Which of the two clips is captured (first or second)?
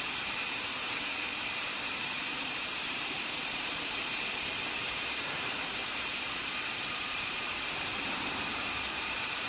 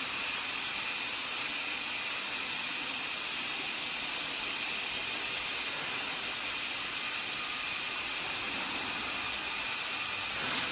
second